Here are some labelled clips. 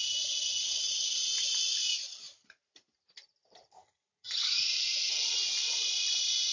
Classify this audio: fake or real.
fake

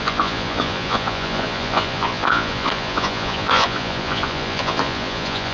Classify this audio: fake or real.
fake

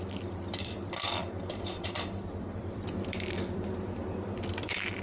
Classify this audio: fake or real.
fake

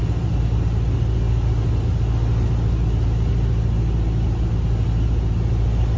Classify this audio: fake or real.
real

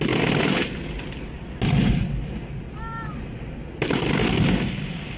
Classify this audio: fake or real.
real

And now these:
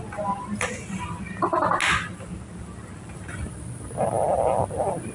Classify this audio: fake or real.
real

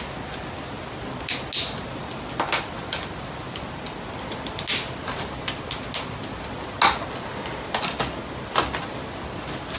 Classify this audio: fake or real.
real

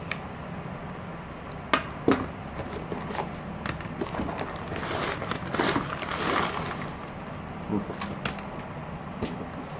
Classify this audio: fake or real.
real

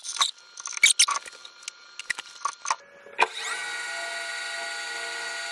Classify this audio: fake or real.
real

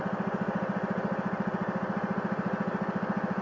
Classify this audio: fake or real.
fake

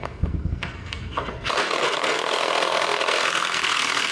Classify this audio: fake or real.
fake